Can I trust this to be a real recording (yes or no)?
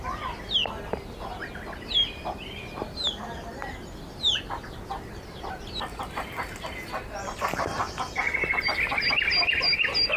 yes